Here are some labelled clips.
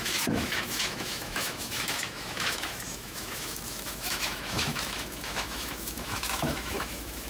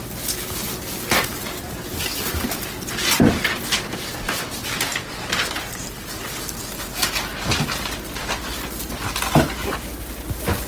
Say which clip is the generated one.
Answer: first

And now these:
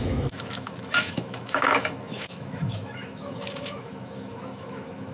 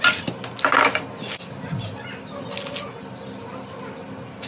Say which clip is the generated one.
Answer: first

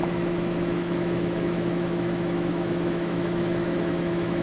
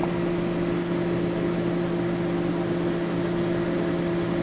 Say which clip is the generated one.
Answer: first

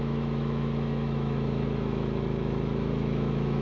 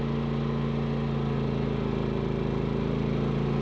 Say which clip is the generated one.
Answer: first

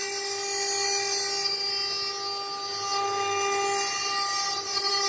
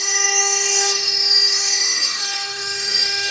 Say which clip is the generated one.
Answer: second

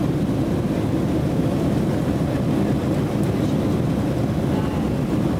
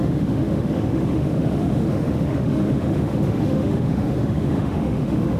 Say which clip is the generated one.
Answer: second